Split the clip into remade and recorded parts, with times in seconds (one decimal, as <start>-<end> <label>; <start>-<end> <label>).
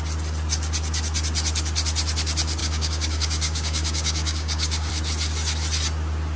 0.0-2.6 recorded; 2.6-4.9 remade; 4.9-6.4 recorded